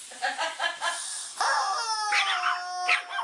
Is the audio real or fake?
real